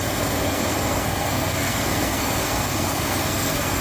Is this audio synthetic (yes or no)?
yes